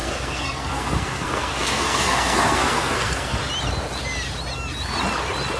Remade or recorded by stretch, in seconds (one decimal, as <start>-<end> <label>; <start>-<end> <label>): 0.0-3.4 remade; 3.4-5.6 recorded